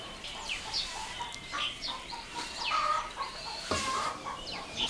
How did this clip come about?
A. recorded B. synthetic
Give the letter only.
B